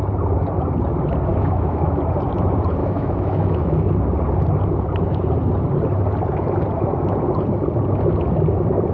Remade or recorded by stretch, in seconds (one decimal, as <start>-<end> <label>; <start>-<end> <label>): 0.0-1.3 recorded; 1.3-2.0 remade; 2.0-2.8 recorded; 2.8-3.9 remade; 3.9-8.9 recorded